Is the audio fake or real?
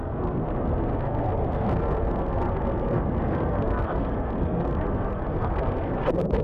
fake